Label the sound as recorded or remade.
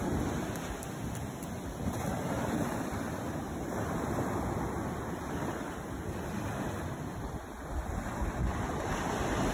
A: recorded